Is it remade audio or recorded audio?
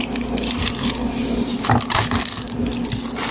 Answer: recorded